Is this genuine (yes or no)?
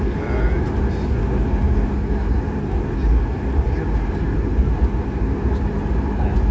yes